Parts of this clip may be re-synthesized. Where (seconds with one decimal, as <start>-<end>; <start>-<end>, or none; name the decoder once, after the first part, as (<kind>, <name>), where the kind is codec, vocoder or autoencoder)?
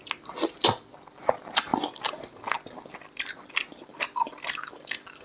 none